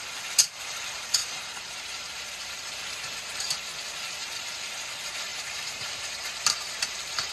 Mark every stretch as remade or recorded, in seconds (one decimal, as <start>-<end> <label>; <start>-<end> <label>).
0.0-1.2 recorded; 1.2-2.8 remade; 2.8-4.2 recorded; 4.2-4.7 remade; 4.7-5.3 recorded; 5.3-7.3 remade